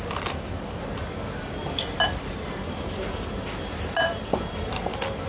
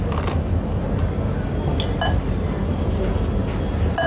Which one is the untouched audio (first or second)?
second